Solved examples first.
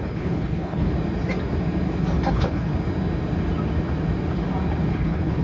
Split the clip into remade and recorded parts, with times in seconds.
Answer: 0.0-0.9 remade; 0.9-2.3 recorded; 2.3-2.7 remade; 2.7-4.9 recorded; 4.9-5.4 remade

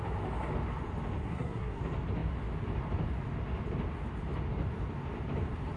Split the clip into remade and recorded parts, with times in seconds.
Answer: 0.0-1.2 recorded; 1.2-1.8 remade; 1.8-5.8 recorded

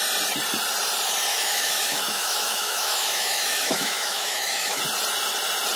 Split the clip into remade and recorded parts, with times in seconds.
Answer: 0.0-1.3 recorded; 1.3-4.8 remade; 4.8-5.8 recorded

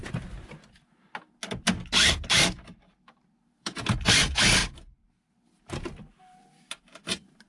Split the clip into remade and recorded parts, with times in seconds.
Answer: 0.0-2.1 recorded; 2.1-7.5 remade